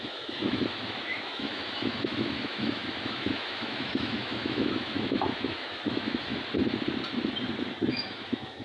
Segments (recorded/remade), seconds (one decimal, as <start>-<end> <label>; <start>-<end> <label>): 0.0-6.3 remade; 6.3-7.9 recorded; 7.9-8.6 remade